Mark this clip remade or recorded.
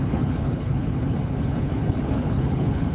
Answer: remade